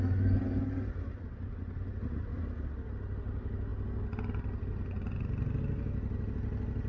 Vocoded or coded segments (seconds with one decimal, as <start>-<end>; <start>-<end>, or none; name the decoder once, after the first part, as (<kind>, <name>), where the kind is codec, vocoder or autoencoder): none